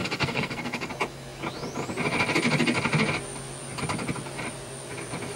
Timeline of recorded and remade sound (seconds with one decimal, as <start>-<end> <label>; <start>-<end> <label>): 0.0-0.9 remade; 0.9-5.4 recorded